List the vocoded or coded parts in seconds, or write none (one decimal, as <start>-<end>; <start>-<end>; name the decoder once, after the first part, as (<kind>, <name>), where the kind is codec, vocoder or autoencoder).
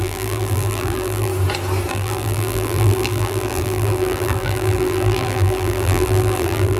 0.0-1.3 (vocoder, BigVGAN v2); 1.9-6.8